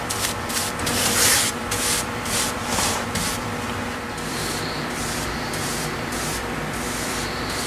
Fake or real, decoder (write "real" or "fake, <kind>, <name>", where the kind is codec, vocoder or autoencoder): fake, vocoder, BigVGAN v2